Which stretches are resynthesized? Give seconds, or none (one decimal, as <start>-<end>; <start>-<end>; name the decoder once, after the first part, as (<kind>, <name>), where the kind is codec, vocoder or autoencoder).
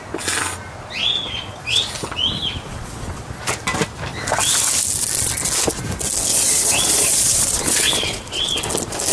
1.0-1.9 (vocoder, Vocos); 2.7-3.5; 6.3-8.5